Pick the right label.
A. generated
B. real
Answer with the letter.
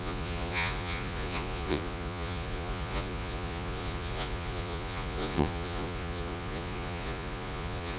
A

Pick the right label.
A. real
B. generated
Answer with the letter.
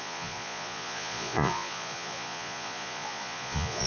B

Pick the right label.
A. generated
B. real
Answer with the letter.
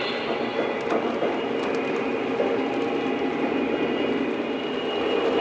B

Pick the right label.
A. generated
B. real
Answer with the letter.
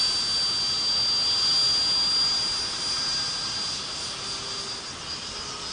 B